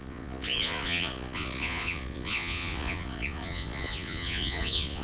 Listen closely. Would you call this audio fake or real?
fake